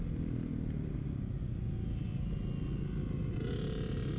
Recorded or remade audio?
recorded